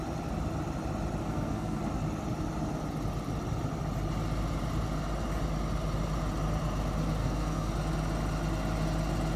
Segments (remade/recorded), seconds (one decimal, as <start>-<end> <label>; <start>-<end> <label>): 0.0-1.2 recorded; 1.2-1.8 remade; 1.8-7.2 recorded; 7.2-7.7 remade; 7.7-9.4 recorded